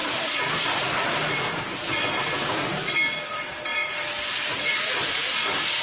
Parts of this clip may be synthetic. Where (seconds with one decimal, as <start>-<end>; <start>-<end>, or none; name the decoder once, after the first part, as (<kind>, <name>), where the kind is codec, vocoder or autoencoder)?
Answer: 0.0-2.4 (vocoder, BigVGAN v2); 3.3-5.8